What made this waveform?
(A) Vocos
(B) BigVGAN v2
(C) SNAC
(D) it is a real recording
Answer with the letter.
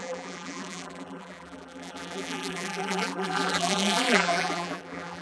B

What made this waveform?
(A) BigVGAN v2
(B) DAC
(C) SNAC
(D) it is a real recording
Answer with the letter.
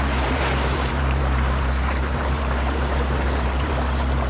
A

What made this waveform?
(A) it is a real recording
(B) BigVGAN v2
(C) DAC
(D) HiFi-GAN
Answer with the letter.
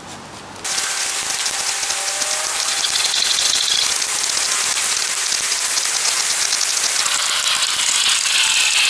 A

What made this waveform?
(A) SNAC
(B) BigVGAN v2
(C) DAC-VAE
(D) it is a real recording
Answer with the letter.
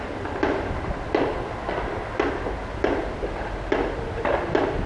D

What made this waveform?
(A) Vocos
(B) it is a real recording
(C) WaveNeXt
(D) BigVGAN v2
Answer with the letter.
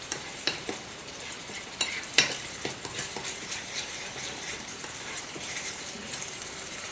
D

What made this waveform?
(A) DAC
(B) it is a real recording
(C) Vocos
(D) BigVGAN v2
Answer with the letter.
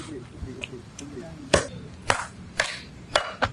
D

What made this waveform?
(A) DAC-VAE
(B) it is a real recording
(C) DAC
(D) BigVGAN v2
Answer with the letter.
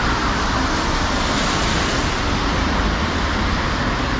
B